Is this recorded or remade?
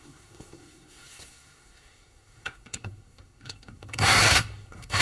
remade